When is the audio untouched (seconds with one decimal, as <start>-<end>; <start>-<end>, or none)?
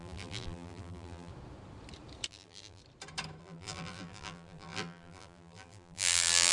1.3-2.3; 2.8-3.4